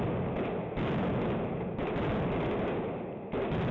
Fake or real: real